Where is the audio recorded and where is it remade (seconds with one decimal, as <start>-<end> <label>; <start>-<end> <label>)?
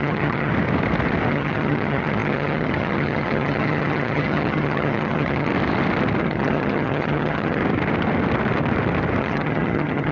0.0-0.5 remade; 0.5-1.3 recorded; 1.3-5.5 remade; 5.5-6.2 recorded; 6.2-7.6 remade; 7.6-9.2 recorded; 9.2-10.1 remade